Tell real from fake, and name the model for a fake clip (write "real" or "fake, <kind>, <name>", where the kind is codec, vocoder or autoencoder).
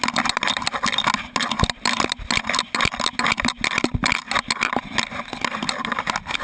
real